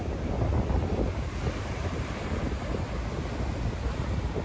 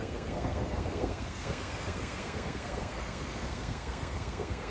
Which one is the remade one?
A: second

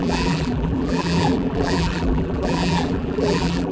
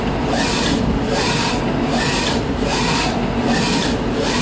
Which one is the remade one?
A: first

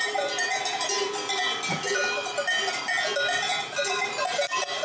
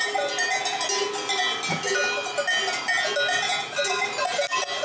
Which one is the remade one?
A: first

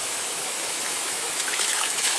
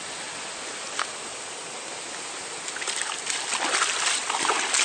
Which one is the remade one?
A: first